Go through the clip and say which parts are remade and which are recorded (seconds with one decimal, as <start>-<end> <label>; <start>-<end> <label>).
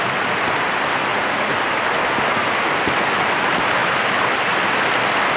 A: 0.0-1.1 recorded; 1.1-1.6 remade; 1.6-5.4 recorded